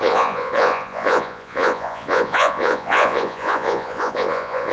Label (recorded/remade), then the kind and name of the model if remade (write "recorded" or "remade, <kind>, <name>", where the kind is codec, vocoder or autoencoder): remade, vocoder, Vocos